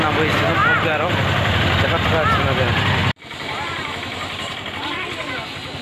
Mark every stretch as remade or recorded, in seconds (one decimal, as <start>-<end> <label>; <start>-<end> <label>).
0.0-0.6 recorded; 0.6-1.6 remade; 1.6-3.0 recorded; 3.0-4.7 remade; 4.7-5.8 recorded